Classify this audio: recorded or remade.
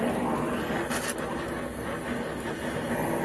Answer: recorded